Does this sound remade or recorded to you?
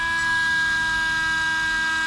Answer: recorded